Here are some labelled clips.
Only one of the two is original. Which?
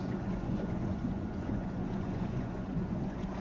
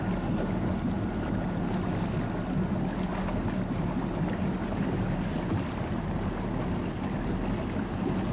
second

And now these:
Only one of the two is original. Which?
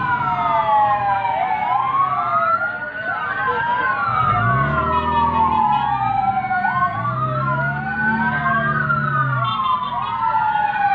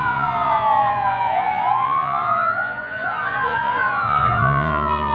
first